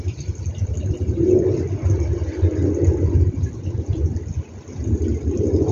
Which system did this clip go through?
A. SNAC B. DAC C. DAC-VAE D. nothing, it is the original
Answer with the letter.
D